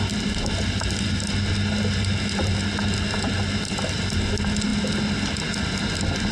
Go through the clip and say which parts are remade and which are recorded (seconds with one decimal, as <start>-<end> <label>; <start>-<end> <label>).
0.0-6.3 recorded